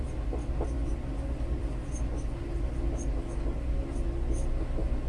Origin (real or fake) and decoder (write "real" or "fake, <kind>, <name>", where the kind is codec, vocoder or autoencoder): real